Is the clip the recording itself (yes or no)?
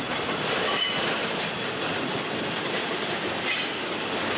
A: yes